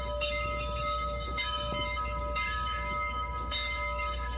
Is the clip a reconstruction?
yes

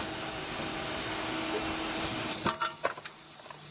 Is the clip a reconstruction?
no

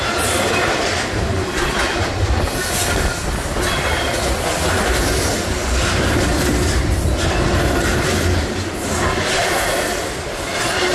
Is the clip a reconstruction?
no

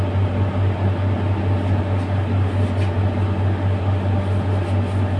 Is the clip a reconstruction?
no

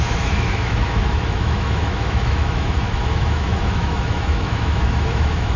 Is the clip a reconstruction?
yes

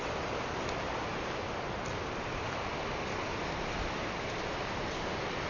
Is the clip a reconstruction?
no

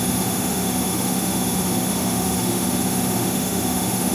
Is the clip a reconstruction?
yes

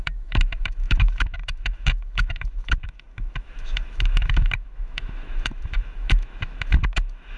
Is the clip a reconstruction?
yes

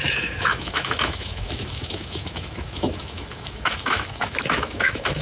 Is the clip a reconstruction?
yes